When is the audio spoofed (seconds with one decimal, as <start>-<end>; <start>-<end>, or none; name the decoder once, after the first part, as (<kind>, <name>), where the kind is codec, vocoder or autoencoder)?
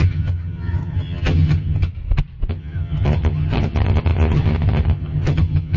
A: 0.0-1.9 (vocoder, HiFi-GAN); 2.5-5.8